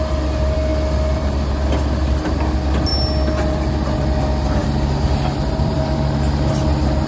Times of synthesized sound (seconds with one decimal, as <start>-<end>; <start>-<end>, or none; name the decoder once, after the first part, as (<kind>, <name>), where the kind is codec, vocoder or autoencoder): 4.6-5.8 (vocoder, BigVGAN v2)